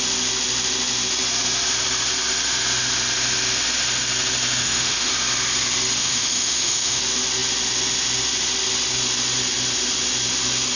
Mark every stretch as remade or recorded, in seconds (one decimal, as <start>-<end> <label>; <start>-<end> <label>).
0.0-4.6 recorded; 4.6-5.1 remade; 5.1-6.0 recorded; 6.0-7.0 remade; 7.0-10.8 recorded